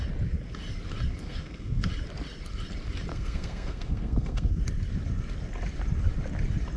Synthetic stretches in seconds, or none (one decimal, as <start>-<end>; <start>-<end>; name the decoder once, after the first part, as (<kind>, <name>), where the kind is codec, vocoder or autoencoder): 1.2-1.9 (codec, SNAC); 3.1-4.6